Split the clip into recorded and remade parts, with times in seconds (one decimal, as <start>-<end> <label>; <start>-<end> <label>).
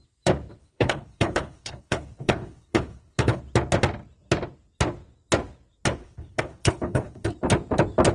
0.0-0.6 recorded; 0.6-3.4 remade; 3.4-6.0 recorded; 6.0-7.3 remade; 7.3-8.1 recorded